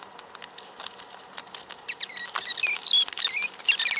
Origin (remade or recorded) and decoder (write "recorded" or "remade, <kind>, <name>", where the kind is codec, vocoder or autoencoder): recorded